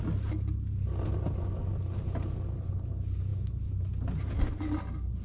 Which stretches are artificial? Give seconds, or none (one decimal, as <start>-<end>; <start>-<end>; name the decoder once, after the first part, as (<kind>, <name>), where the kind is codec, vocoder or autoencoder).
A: none